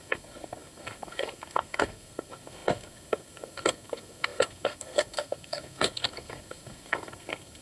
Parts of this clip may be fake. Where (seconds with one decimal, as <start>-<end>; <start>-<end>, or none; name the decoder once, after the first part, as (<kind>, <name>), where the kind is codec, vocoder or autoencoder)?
0.0-7.6 (codec, SNAC)